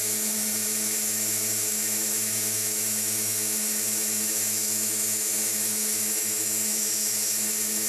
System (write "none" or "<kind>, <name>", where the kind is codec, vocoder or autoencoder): autoencoder, DAC-VAE